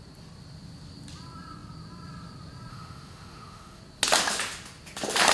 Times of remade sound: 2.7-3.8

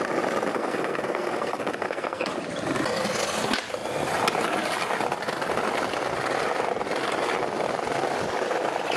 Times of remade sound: 0.5-2.3

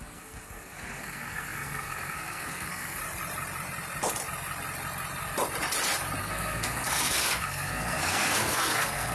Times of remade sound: 0.0-3.0; 6.2-9.1

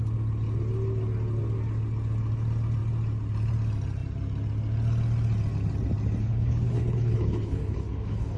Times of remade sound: 6.2-8.4

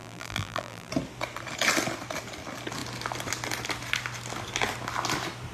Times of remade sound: 0.0-0.9

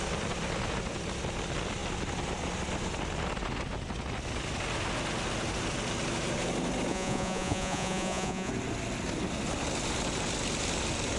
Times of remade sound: 6.9-8.5